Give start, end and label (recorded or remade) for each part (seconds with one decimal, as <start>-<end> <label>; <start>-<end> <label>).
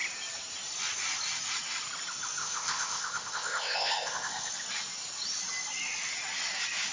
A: 0.0-2.4 recorded; 2.4-4.5 remade; 4.5-6.9 recorded